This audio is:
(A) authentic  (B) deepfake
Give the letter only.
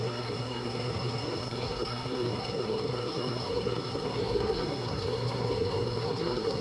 B